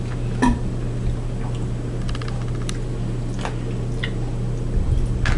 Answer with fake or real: real